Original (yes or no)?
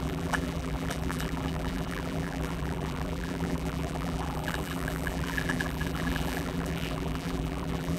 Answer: no